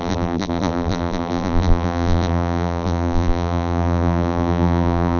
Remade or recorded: remade